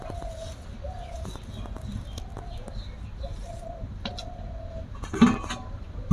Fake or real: real